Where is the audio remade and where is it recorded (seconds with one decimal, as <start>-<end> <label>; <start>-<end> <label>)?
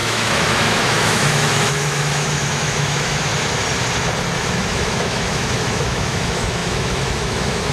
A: 0.0-3.3 remade; 3.3-4.5 recorded; 4.5-7.7 remade